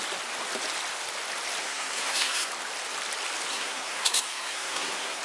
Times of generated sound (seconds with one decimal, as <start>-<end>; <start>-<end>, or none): 1.6-2.5; 3.5-5.2